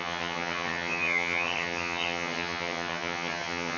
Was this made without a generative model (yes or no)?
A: no